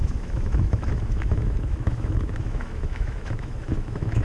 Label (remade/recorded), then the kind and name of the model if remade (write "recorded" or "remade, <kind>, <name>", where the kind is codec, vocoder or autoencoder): remade, autoencoder, DAC-VAE